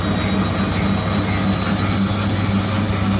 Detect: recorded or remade recorded